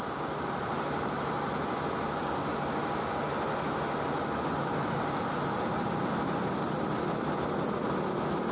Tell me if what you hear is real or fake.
real